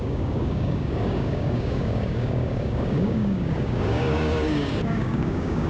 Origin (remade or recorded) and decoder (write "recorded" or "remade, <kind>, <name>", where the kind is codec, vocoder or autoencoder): remade, codec, DAC